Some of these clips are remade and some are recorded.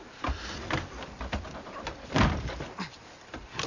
recorded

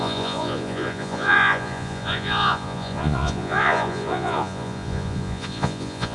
remade